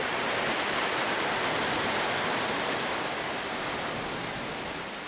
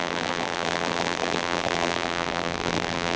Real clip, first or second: first